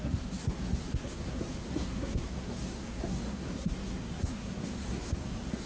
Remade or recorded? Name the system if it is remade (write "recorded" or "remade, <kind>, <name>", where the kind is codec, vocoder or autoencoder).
remade, codec, SNAC